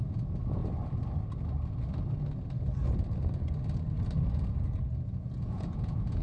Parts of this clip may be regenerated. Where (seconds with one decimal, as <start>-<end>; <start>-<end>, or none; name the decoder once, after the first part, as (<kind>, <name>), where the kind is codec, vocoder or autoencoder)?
0.0-0.6 (vocoder, Vocos); 4.3-6.2